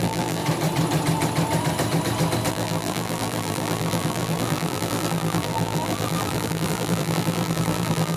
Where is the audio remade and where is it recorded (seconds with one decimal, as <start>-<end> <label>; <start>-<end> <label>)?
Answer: 0.0-0.4 remade; 0.4-2.5 recorded; 2.5-8.2 remade